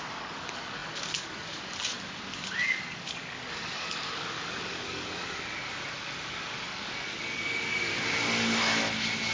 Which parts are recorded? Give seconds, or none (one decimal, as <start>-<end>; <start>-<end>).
7.9-9.3